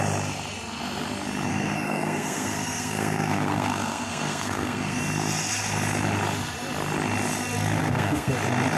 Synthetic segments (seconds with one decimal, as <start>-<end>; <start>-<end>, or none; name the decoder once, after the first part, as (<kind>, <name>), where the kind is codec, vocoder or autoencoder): 1.5-5.0 (codec, SNAC); 7.8-8.3